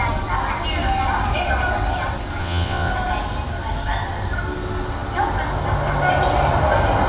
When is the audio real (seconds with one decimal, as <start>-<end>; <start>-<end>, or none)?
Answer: 0.0-2.4; 2.9-7.1